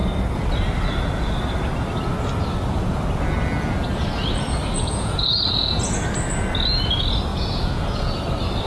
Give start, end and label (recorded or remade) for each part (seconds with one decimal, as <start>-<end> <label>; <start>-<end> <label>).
0.0-4.6 recorded; 4.6-5.8 remade; 5.8-7.3 recorded; 7.3-8.1 remade; 8.1-8.7 recorded